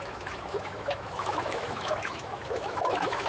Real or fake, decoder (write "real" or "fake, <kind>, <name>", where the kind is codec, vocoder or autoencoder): fake, autoencoder, DAC-VAE